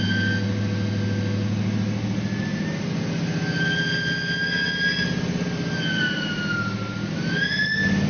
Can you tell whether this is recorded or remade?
recorded